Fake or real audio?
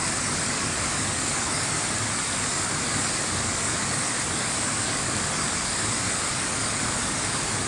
fake